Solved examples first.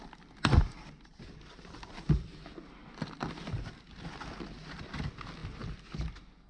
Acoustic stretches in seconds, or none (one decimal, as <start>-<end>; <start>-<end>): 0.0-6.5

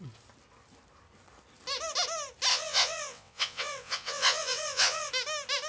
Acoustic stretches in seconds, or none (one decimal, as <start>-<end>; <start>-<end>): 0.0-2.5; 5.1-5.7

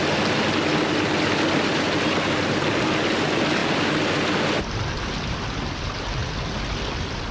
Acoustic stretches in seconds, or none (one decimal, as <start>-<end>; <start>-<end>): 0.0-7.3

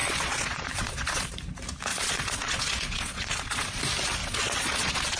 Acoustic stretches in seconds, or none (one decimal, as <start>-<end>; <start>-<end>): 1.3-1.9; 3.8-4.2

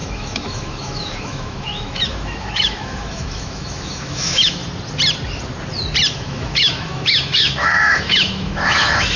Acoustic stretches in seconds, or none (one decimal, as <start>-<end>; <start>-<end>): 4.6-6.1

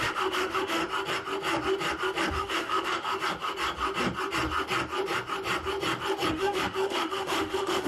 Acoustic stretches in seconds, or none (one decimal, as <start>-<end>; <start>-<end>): 0.8-2.3; 3.2-6.3

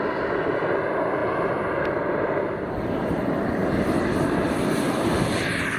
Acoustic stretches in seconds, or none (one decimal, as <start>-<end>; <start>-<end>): 0.0-5.8